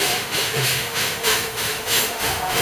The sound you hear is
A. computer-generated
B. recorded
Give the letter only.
A